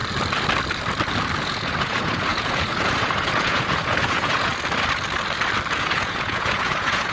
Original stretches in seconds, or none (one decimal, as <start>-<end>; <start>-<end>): 0.0-1.4; 4.5-5.7